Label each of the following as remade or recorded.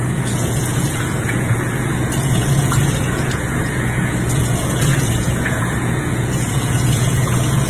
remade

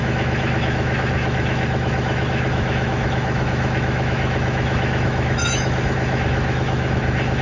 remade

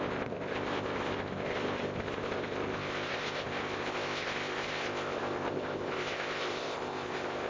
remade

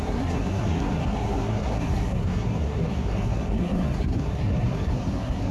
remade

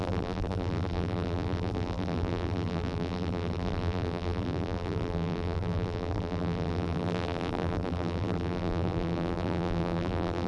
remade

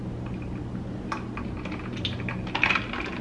recorded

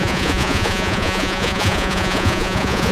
remade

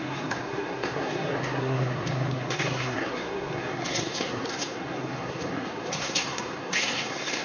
remade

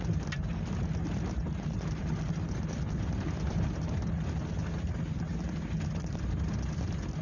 recorded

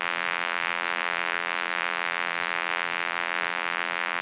remade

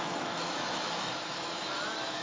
remade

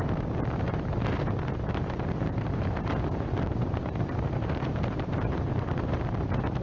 remade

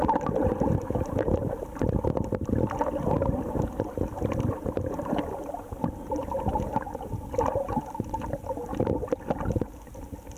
recorded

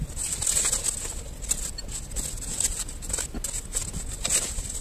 recorded